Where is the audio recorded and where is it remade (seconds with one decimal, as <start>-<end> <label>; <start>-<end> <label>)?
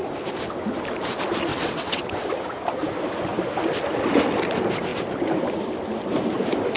0.0-1.5 recorded; 1.5-2.1 remade; 2.1-6.8 recorded